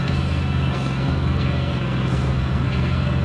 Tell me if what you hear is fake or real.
fake